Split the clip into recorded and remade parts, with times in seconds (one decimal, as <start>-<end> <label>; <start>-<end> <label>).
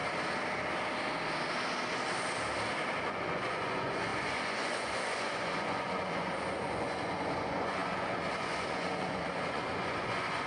0.0-3.0 recorded; 3.0-10.5 remade